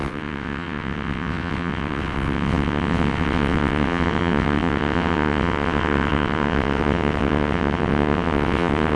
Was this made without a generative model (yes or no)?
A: no